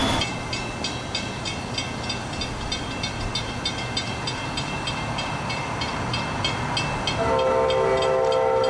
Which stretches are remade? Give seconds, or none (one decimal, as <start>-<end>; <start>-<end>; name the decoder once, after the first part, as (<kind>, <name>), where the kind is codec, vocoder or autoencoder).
none